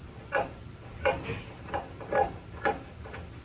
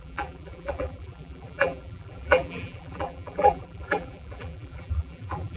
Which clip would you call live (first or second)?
first